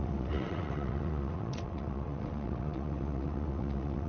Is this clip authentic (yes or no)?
no